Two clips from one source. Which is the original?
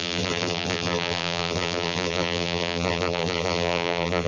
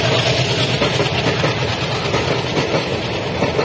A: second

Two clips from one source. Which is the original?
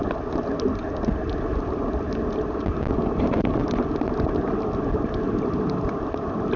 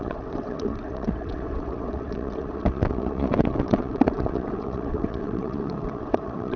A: first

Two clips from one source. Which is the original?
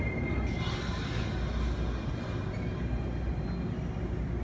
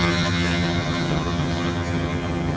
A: first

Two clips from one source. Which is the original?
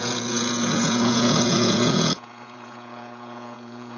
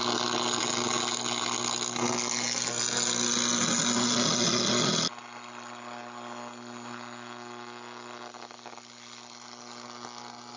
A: second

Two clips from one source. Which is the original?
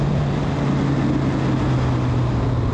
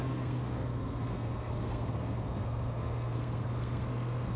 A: first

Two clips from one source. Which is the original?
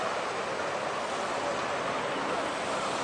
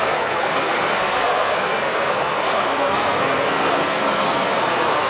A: first